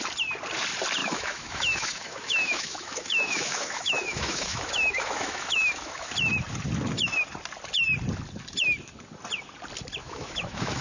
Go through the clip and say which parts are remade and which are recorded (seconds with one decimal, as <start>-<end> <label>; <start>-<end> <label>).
0.0-1.0 recorded; 1.0-6.1 remade; 6.1-10.0 recorded; 10.0-10.8 remade